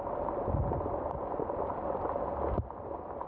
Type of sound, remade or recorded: recorded